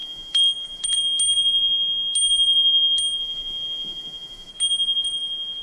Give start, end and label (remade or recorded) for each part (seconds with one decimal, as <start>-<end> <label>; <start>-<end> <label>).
0.0-0.8 remade; 0.8-3.2 recorded; 3.2-4.5 remade; 4.5-5.6 recorded